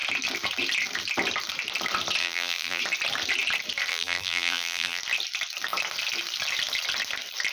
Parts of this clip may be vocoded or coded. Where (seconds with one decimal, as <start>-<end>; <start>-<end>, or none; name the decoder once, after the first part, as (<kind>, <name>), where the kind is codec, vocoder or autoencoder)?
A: 2.2-2.8 (vocoder, BigVGAN v2); 3.9-5.0